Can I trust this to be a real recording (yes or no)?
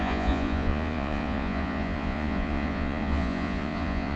no